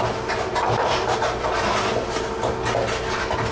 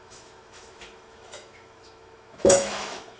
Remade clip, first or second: second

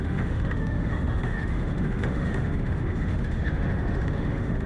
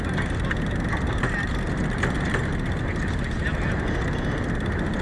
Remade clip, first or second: first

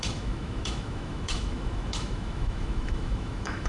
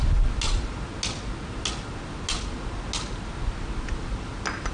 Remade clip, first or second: first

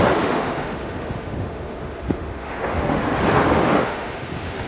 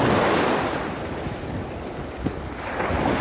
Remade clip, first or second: first